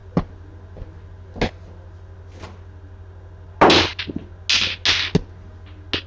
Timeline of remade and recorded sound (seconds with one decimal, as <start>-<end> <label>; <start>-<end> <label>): 0.0-6.1 recorded